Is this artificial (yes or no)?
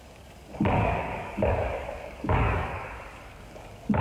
yes